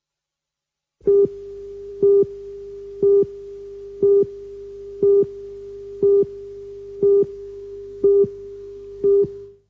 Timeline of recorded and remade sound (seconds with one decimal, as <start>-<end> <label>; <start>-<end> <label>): 0.0-7.3 recorded; 7.3-9.7 remade

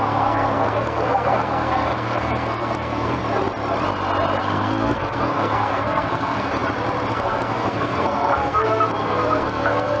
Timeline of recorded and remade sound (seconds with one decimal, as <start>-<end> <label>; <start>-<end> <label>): 0.0-3.2 remade; 3.2-4.4 recorded; 4.4-6.5 remade; 6.5-7.1 recorded; 7.1-10.0 remade